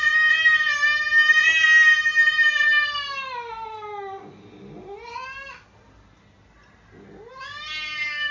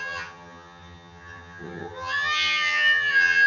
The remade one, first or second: second